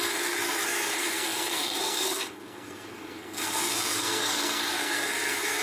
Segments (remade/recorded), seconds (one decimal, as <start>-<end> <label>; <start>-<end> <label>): 0.0-5.6 remade